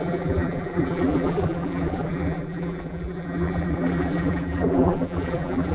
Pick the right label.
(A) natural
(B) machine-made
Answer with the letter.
B